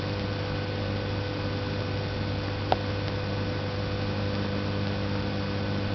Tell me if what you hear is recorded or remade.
recorded